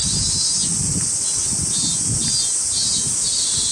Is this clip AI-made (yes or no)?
no